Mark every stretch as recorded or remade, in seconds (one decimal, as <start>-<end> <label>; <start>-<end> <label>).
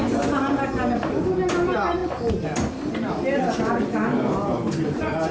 0.0-5.3 recorded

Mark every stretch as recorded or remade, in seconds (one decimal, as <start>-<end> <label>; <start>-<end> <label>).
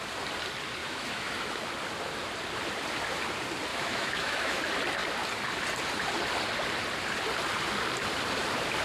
0.0-0.8 recorded; 0.8-1.7 remade; 1.7-3.7 recorded; 3.7-4.6 remade; 4.6-8.8 recorded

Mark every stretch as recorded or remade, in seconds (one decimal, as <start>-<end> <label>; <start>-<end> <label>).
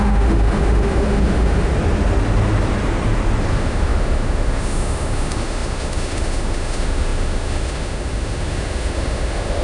0.0-1.7 remade; 1.7-3.5 recorded; 3.5-9.6 remade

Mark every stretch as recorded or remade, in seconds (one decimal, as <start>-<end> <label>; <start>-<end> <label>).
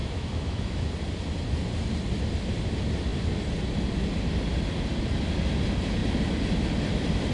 0.0-0.9 remade; 0.9-7.3 recorded